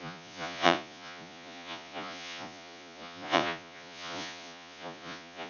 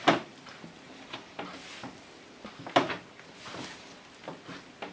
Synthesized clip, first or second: first